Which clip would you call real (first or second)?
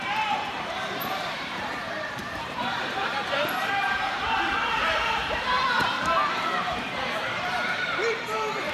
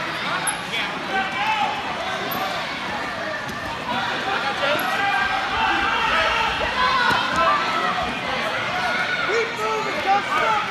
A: second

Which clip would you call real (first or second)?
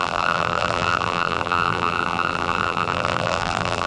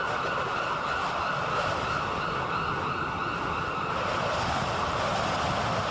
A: second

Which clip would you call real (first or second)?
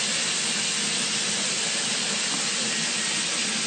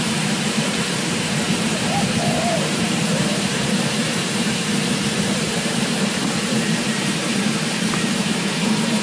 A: first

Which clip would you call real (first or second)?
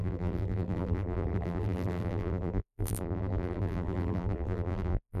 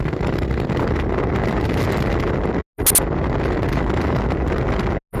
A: second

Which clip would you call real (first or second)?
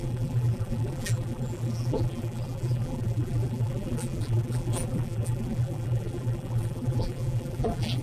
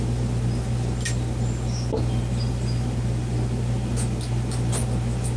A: second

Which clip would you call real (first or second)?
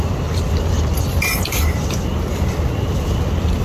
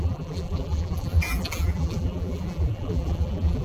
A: first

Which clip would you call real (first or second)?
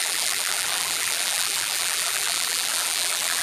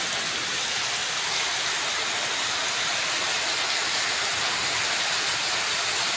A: second